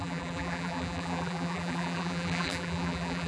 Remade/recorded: remade